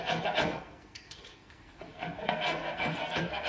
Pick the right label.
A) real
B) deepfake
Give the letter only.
B